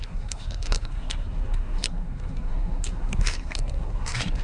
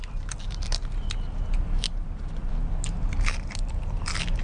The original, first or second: second